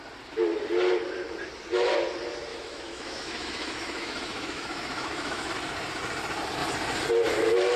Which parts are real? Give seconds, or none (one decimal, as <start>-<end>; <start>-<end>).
0.0-2.5; 5.5-7.8